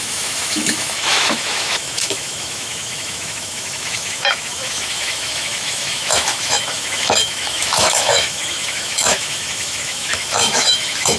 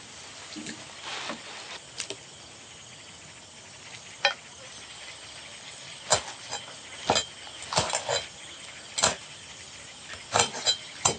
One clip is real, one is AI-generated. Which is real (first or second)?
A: second